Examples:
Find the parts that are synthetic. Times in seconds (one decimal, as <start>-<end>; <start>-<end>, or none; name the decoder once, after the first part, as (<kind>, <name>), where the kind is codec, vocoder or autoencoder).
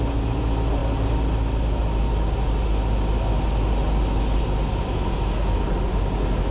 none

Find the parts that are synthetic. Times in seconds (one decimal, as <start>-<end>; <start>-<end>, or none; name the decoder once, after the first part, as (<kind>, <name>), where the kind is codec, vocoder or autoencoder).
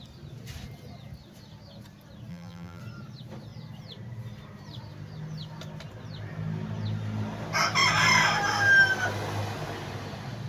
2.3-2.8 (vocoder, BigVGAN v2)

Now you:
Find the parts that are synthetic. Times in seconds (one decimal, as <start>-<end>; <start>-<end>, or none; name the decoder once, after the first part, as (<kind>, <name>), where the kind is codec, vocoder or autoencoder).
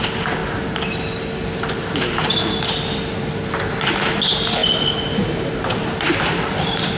none